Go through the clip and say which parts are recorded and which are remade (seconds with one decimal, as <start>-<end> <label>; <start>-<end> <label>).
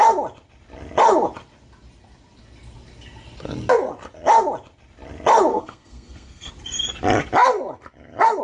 0.0-5.5 recorded; 5.5-6.5 remade; 6.5-8.4 recorded